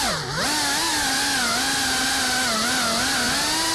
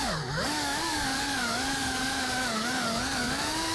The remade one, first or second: second